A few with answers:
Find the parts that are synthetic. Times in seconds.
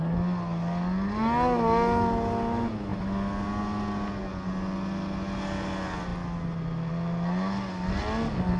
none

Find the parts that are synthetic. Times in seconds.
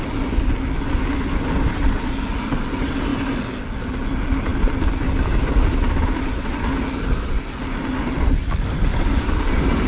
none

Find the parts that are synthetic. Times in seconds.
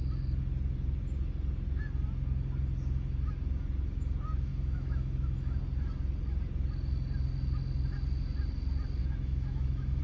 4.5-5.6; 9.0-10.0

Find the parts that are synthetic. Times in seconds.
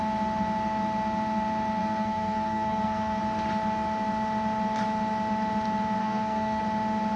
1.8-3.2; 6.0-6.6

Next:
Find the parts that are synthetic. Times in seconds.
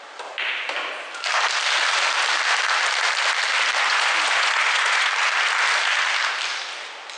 3.9-5.1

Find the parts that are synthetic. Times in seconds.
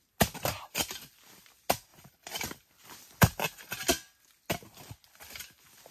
1.9-3.9